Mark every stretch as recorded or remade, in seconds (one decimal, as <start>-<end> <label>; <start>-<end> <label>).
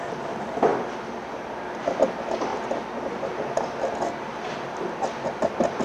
0.0-5.8 recorded